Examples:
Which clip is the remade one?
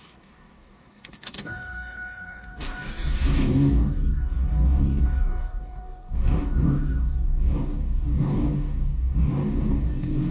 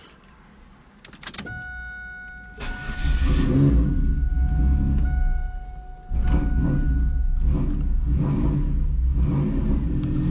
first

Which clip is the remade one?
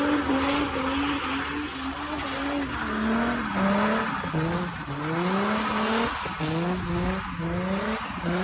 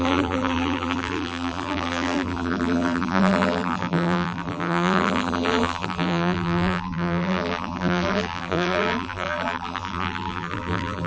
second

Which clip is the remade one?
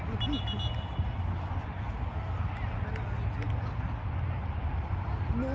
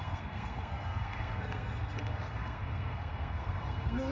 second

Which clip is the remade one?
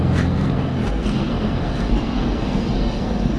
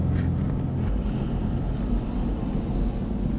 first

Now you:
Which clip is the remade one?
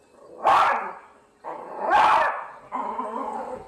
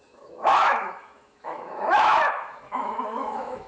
second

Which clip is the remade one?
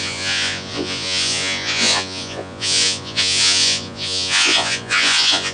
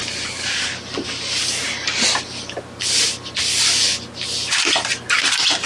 first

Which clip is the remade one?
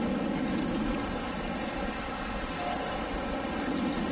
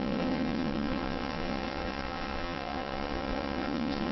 second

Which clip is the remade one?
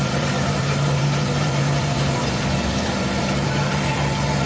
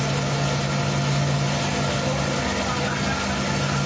first